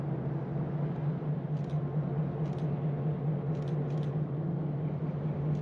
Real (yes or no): yes